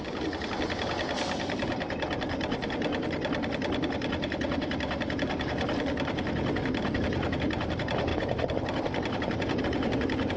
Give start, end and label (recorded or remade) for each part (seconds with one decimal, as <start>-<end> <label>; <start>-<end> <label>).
0.0-8.1 recorded; 8.1-9.6 remade; 9.6-10.4 recorded